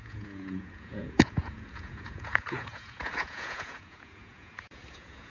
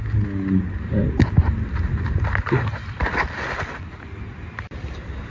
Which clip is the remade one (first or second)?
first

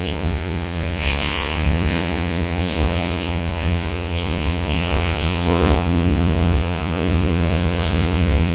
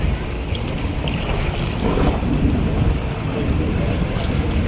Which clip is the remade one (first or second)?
first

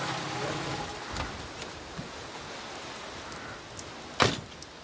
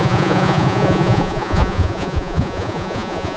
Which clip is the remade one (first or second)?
second